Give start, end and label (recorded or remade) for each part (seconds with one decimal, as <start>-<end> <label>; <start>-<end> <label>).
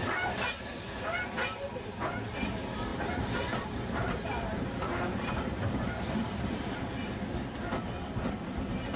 0.0-2.9 recorded; 2.9-6.7 remade; 6.7-9.0 recorded